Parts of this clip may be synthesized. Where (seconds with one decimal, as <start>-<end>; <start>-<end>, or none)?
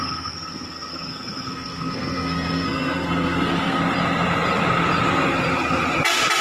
0.0-3.8